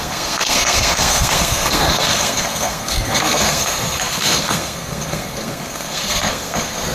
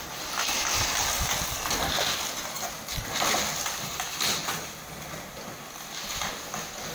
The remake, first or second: first